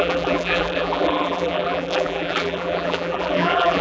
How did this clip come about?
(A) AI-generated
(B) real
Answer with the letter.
A